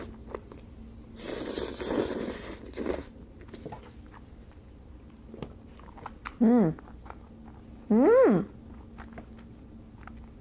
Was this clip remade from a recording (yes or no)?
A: no